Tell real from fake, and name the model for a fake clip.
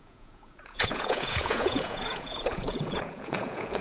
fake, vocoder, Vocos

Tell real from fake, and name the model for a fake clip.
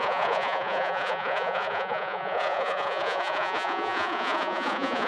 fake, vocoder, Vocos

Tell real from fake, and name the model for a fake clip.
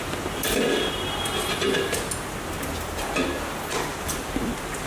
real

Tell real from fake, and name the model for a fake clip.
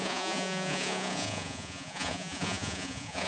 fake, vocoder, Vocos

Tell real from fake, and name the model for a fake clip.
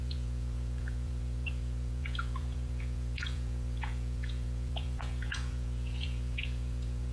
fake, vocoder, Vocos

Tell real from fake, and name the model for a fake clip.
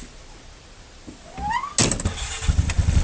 real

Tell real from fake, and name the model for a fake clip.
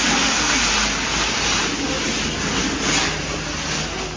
real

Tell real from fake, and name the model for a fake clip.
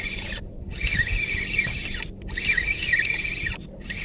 real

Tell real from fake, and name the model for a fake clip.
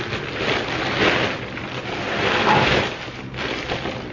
real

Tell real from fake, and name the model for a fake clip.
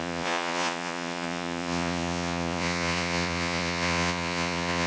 fake, vocoder, Vocos